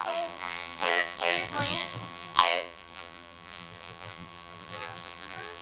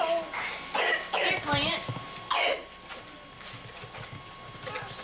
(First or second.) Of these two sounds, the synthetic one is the first